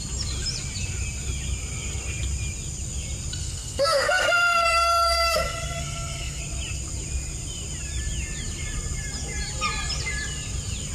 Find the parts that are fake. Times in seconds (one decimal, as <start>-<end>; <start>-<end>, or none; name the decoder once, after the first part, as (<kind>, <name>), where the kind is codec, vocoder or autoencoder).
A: 3.4-6.4 (codec, SNAC)